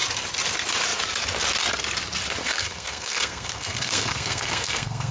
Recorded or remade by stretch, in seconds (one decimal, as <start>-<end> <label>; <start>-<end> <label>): 0.0-2.4 recorded; 2.4-5.1 remade